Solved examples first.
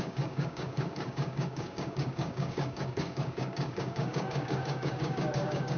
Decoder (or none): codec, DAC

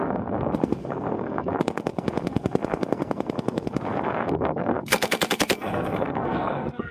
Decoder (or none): codec, SNAC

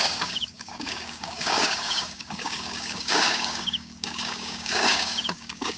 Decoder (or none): codec, DAC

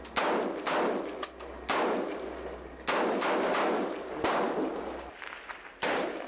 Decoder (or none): none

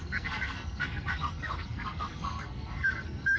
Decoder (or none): codec, SNAC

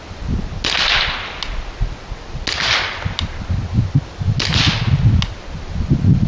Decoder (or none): none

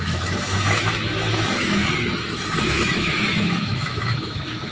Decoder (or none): autoencoder, DAC-VAE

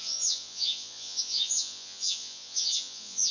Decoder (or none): vocoder, Vocos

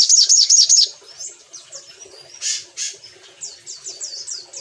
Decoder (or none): none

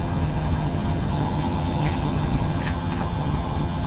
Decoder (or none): vocoder, HiFi-GAN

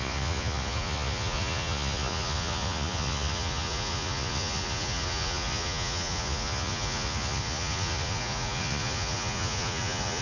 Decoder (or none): vocoder, Vocos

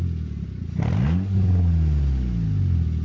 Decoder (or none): none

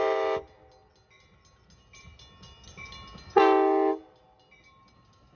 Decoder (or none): none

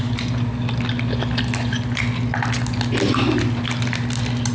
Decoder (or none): none